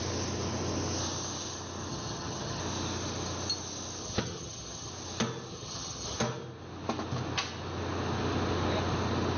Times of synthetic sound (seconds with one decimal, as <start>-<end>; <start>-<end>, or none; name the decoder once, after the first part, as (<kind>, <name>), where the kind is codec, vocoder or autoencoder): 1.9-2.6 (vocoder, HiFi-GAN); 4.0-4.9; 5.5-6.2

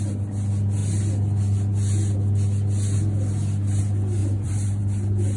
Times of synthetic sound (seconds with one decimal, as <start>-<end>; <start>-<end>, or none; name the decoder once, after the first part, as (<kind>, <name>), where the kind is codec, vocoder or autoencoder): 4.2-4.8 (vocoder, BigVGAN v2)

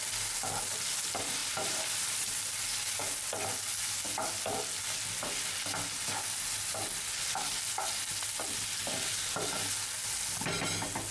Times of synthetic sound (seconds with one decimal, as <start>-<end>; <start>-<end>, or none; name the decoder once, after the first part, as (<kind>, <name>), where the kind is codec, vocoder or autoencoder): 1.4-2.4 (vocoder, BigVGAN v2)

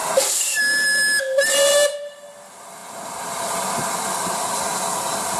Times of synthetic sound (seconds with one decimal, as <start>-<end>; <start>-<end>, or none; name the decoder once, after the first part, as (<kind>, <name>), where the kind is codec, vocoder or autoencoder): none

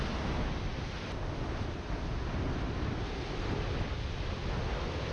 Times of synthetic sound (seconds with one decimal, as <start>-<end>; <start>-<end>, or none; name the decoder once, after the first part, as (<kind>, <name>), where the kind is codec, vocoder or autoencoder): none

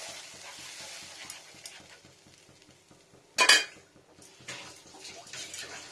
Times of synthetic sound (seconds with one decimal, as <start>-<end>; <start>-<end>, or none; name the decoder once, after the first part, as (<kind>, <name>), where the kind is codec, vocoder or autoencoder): none

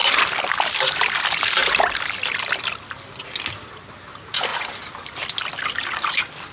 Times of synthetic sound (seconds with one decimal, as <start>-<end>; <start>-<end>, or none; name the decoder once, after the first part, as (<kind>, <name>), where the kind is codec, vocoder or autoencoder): 0.0-6.5 (vocoder, BigVGAN v2)